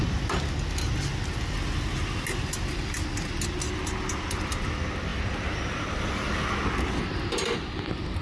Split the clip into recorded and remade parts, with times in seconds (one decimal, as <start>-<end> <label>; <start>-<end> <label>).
0.0-8.2 recorded